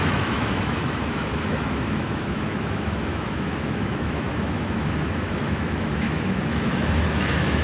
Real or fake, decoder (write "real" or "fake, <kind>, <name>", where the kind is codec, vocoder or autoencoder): fake, autoencoder, DAC-VAE